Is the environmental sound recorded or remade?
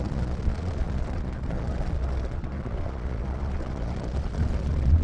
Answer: remade